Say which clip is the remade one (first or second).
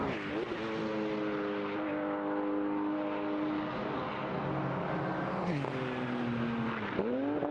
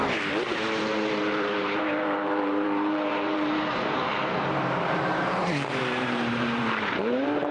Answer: second